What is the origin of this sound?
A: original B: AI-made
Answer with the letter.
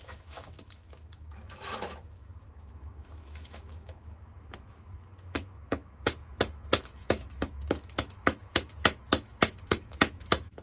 B